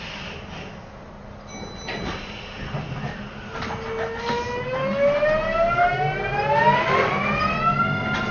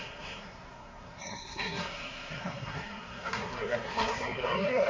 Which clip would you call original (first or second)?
first